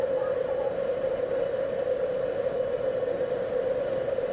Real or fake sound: real